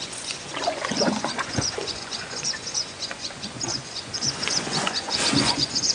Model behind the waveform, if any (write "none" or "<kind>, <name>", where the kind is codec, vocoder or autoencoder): vocoder, Vocos